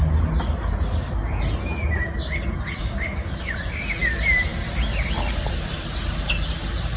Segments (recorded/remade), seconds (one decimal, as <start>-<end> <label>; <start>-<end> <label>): 0.0-2.8 recorded; 2.8-3.5 remade; 3.5-7.0 recorded